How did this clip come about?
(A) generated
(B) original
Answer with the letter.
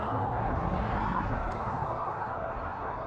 A